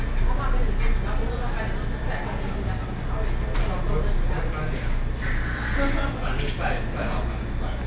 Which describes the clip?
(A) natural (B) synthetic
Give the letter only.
A